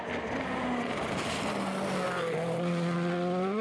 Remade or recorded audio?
recorded